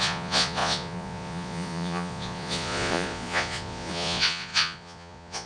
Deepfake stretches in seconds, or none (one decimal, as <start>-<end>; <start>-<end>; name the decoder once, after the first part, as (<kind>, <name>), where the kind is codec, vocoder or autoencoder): 0.0-5.5 (vocoder, Vocos)